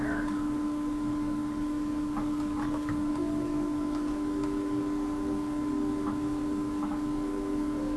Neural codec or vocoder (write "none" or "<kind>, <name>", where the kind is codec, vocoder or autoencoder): codec, DAC